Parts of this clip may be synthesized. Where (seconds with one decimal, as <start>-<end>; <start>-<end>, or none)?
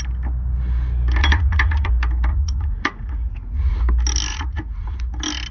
1.2-1.9; 2.3-3.8; 4.3-5.1